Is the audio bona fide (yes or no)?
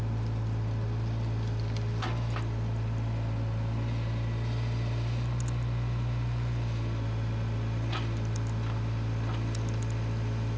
yes